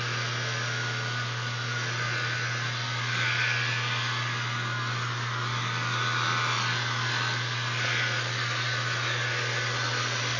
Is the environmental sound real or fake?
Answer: real